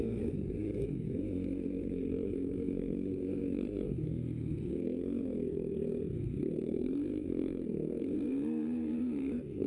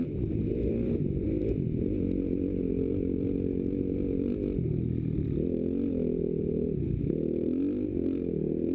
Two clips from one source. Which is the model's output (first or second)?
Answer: first